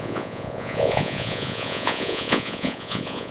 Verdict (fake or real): fake